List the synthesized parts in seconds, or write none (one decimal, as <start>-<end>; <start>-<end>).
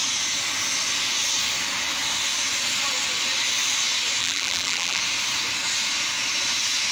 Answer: 4.2-5.0